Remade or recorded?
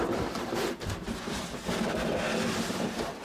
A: recorded